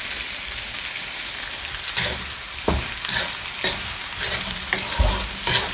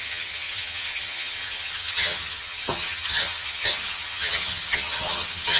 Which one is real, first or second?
first